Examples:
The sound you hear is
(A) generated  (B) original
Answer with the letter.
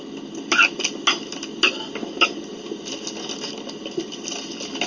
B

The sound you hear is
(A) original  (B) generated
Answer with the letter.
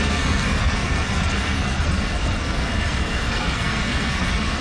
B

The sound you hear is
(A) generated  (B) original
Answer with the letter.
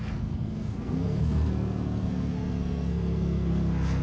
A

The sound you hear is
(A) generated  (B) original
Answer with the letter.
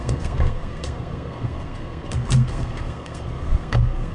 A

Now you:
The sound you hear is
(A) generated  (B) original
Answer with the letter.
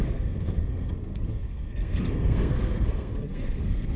A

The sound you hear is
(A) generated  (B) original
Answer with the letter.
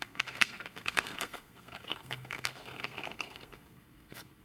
A